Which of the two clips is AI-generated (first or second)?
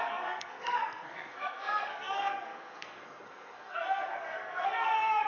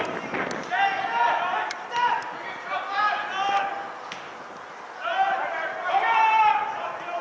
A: first